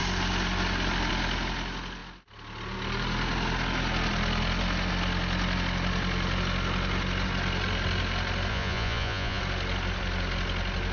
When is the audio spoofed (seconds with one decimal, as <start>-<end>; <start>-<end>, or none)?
8.5-9.4